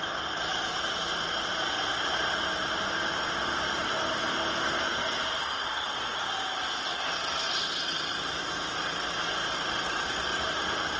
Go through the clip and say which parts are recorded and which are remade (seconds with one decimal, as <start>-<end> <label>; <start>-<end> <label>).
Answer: 0.0-11.0 recorded